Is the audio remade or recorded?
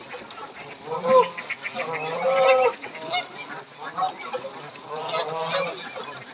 recorded